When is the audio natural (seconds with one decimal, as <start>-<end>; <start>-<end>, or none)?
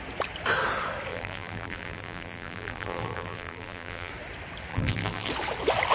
0.0-1.1; 4.1-4.7; 5.3-5.9